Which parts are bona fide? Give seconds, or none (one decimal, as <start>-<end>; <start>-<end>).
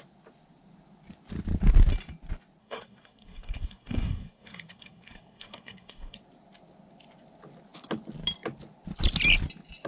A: 0.0-2.6; 6.2-9.9